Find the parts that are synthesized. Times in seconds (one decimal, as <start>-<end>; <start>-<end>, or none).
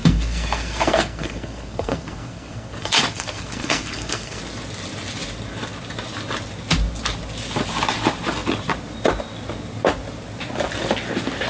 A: 0.0-4.4